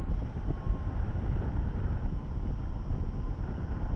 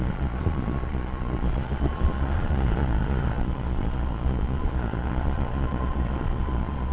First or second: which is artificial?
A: second